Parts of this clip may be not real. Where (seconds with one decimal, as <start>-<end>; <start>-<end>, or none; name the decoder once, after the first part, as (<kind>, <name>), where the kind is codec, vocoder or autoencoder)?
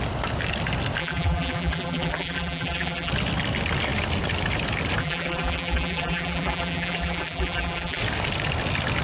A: 1.0-3.1 (vocoder, BigVGAN v2); 5.0-8.0